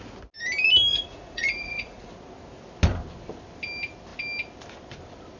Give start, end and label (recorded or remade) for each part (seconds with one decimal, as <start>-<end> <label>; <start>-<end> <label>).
0.0-0.9 recorded; 0.9-2.1 remade; 2.1-5.4 recorded